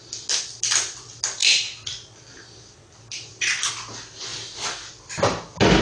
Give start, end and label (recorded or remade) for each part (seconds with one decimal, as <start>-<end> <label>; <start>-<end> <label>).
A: 0.0-1.4 recorded; 1.4-3.7 remade; 3.7-4.3 recorded; 4.3-5.0 remade; 5.0-5.8 recorded